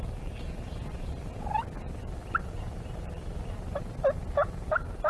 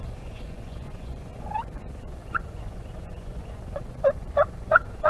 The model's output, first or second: second